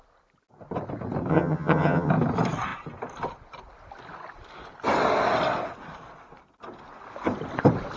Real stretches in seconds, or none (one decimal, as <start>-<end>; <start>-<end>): 0.0-1.3; 2.1-8.0